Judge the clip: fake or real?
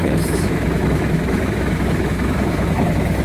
fake